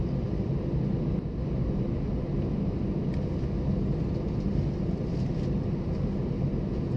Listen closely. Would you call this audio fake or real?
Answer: real